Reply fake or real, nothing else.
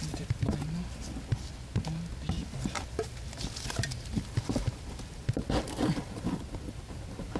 real